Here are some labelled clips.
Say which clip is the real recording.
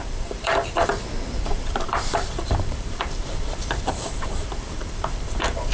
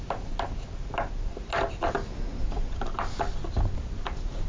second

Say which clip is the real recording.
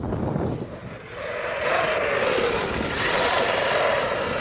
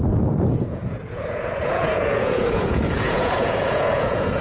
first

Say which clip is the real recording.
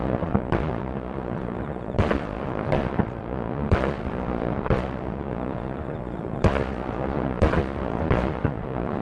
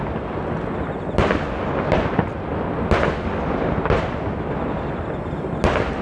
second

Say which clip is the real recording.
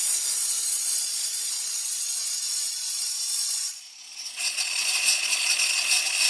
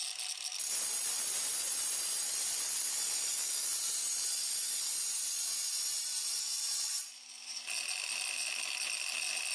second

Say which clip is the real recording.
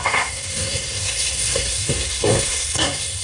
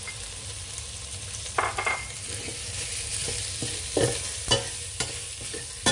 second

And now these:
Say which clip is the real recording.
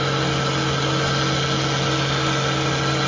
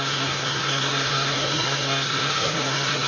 first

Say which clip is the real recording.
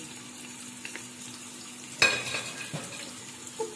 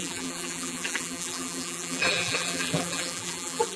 first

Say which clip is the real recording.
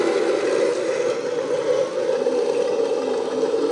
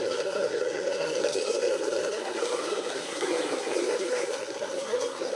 first